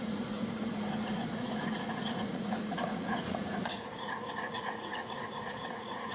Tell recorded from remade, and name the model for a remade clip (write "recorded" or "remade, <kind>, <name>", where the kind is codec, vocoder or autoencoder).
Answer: remade, vocoder, Vocos